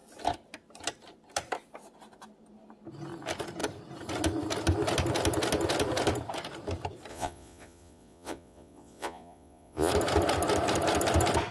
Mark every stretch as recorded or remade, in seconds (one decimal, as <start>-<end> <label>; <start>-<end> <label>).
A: 0.0-7.1 recorded; 7.1-9.9 remade; 9.9-11.5 recorded